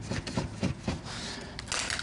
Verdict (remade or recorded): recorded